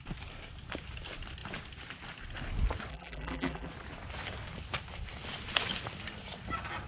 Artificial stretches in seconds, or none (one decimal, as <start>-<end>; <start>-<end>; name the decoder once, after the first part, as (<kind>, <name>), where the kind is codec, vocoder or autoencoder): 2.9-3.7 (vocoder, BigVGAN v2)